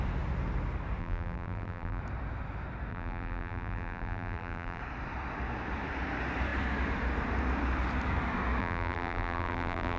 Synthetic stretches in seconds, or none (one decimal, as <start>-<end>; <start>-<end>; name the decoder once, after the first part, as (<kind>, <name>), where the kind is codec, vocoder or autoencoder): 1.0-2.0 (vocoder, BigVGAN v2); 2.9-4.8; 8.6-10.0